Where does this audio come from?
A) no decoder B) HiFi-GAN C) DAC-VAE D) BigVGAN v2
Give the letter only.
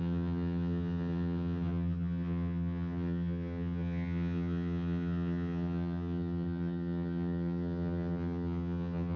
B